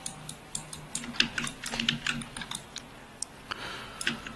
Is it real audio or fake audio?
real